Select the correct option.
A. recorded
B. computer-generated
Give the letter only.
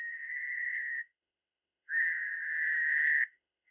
B